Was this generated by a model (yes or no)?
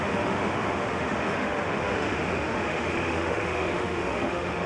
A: yes